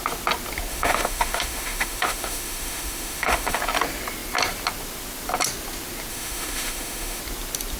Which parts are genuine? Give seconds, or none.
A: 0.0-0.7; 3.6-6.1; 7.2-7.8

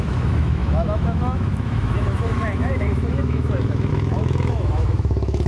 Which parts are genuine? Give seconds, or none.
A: none

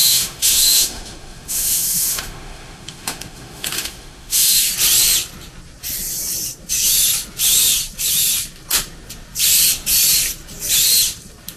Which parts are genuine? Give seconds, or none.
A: 4.7-11.6

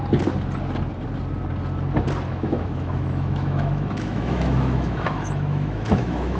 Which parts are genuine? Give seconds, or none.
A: 0.0-2.3

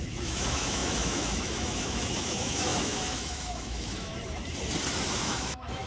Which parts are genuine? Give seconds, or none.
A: 4.1-5.1